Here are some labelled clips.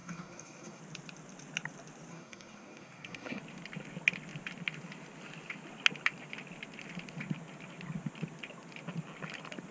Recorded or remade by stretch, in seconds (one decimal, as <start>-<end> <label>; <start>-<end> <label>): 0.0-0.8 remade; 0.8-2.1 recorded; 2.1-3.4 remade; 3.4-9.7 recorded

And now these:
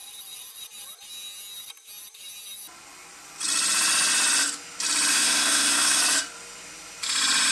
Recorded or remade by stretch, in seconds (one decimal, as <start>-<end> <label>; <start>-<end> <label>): 0.0-5.1 recorded; 5.1-6.0 remade; 6.0-7.5 recorded

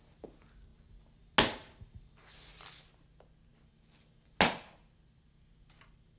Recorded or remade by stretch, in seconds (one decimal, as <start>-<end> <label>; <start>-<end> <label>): 0.0-6.2 recorded

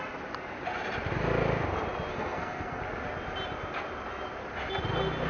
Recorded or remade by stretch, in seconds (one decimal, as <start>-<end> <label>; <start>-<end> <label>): 0.0-2.1 recorded; 2.1-2.8 remade; 2.8-5.3 recorded

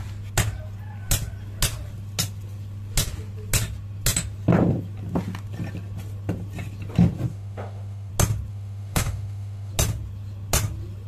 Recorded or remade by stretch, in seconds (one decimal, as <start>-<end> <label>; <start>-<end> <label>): 0.0-7.3 recorded; 7.3-8.1 remade; 8.1-8.5 recorded; 8.5-9.7 remade; 9.7-11.1 recorded

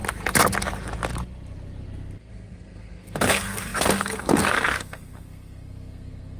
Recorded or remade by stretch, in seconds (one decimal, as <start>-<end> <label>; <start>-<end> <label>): 0.0-2.3 recorded; 2.3-6.4 remade

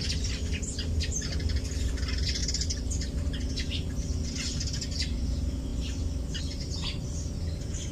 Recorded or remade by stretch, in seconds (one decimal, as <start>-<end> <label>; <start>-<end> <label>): 0.0-7.9 recorded